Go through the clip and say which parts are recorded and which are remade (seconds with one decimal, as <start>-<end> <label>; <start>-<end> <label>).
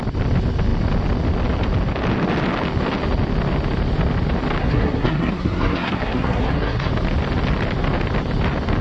0.0-4.6 recorded; 4.6-6.9 remade; 6.9-8.8 recorded